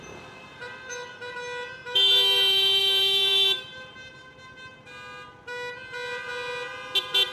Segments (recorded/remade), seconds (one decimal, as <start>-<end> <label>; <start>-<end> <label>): 0.0-1.8 recorded; 1.8-4.1 remade; 4.1-7.3 recorded